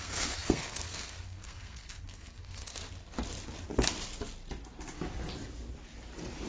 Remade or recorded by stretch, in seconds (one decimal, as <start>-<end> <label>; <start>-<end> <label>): 0.0-2.8 remade; 2.8-6.5 recorded